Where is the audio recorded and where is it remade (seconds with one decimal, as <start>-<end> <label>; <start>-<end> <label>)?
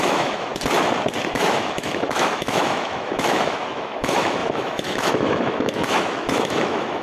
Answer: 0.0-0.5 remade; 0.5-1.3 recorded; 1.3-7.0 remade